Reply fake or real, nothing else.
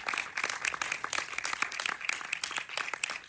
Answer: real